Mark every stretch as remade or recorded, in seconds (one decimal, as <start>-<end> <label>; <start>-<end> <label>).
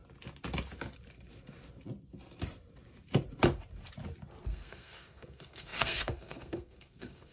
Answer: 0.0-4.4 recorded; 4.4-7.3 remade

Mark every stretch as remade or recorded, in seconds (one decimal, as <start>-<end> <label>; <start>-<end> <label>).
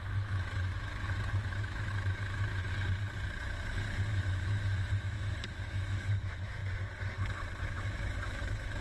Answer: 0.0-2.6 remade; 2.6-4.1 recorded; 4.1-6.6 remade; 6.6-7.6 recorded; 7.6-8.8 remade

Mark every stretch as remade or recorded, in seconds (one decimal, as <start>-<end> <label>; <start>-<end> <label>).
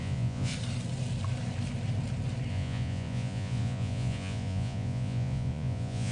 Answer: 0.0-0.5 remade; 0.5-2.5 recorded; 2.5-6.1 remade